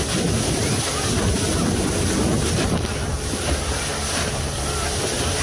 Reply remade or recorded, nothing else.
recorded